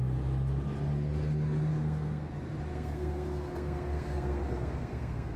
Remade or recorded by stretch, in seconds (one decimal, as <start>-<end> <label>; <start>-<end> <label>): 0.0-1.7 recorded; 1.7-2.3 remade; 2.3-2.7 recorded; 2.7-5.4 remade